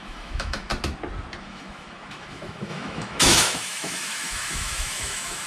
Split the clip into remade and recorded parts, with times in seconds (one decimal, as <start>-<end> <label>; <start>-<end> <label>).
0.0-0.7 remade; 0.7-1.4 recorded; 1.4-5.5 remade